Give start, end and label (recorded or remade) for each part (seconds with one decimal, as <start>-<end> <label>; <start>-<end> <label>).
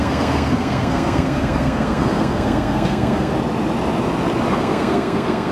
0.0-3.3 remade; 3.3-4.5 recorded; 4.5-5.5 remade